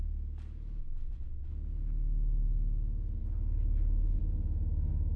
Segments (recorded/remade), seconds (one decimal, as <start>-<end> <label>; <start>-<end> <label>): 0.0-0.8 recorded; 0.8-1.5 remade; 1.5-5.2 recorded